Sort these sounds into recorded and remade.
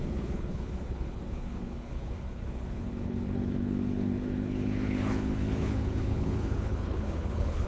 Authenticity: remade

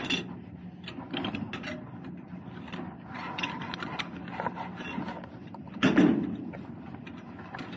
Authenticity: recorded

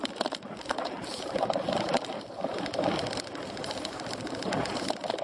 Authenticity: recorded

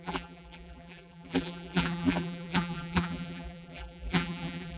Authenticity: remade